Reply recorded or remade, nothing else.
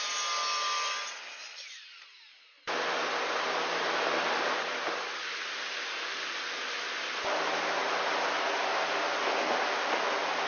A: recorded